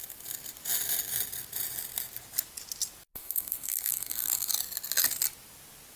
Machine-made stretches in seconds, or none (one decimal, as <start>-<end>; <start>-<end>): 3.1-4.5